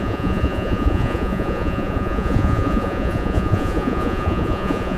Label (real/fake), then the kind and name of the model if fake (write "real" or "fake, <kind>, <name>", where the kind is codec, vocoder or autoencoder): fake, vocoder, Vocos